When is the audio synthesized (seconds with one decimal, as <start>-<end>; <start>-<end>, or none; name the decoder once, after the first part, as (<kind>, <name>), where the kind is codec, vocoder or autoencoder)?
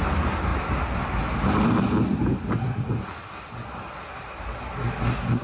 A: none